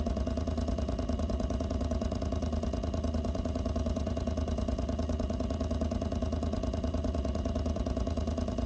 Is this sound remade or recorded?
remade